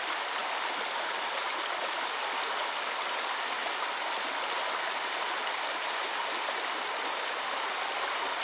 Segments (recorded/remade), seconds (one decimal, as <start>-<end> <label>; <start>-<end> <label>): 0.0-8.4 recorded